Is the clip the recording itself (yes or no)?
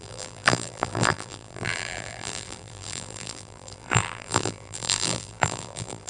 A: no